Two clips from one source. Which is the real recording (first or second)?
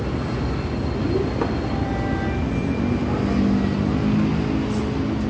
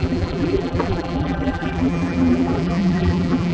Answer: first